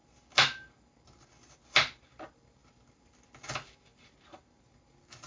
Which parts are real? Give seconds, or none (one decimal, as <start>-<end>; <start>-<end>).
0.0-5.3